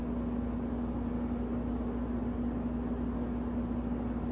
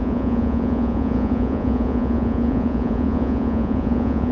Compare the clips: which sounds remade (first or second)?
second